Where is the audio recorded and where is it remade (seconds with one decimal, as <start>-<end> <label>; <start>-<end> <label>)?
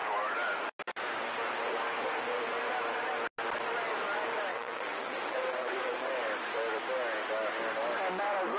0.0-4.5 recorded; 4.5-6.1 remade; 6.1-8.6 recorded